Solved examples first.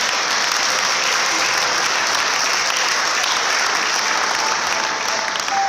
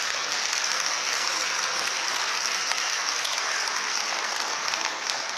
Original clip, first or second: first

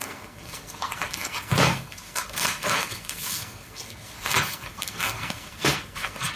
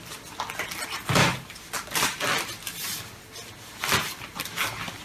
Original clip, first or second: second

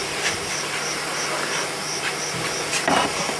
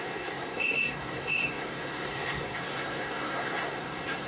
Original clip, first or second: first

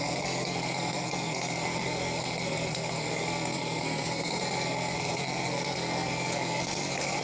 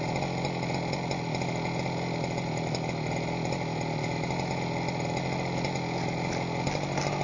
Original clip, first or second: second